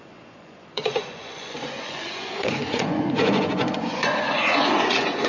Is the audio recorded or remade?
remade